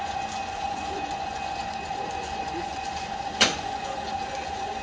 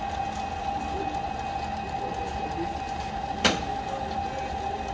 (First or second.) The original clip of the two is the second